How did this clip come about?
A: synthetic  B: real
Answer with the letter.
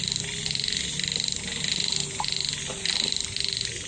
B